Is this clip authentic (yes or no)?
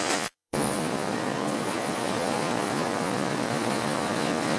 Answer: no